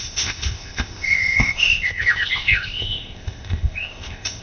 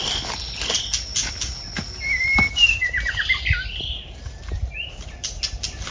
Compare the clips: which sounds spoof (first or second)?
first